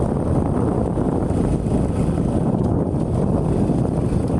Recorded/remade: recorded